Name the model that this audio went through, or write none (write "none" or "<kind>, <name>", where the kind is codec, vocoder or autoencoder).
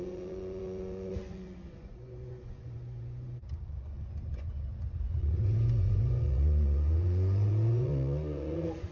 vocoder, Vocos